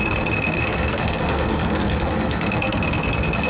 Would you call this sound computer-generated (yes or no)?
yes